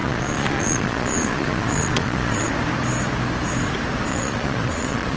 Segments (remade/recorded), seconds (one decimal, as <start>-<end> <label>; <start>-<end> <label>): 0.0-2.5 remade; 2.5-4.1 recorded; 4.1-5.2 remade